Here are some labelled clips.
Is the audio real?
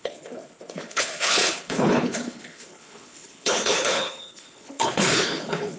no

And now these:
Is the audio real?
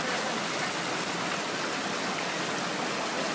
yes